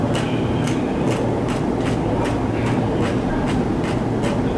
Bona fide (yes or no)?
yes